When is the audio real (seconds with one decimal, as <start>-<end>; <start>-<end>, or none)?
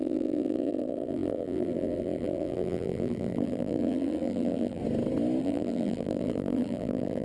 4.8-5.4